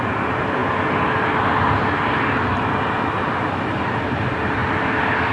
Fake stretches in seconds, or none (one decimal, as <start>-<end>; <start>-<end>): none